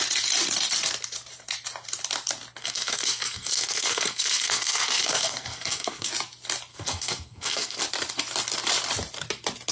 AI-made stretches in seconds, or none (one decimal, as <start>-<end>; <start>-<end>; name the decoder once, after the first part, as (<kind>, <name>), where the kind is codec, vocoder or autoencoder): 2.6-6.1 (codec, SNAC); 6.7-7.8